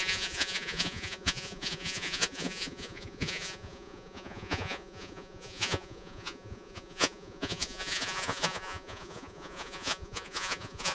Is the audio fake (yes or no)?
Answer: yes